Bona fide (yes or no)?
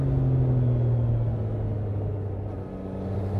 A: yes